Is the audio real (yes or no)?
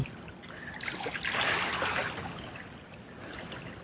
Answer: yes